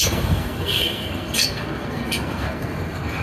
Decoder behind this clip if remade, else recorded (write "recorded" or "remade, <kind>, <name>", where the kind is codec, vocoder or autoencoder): remade, codec, SNAC